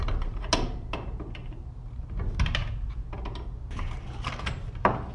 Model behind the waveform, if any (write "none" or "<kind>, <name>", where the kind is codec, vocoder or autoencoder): none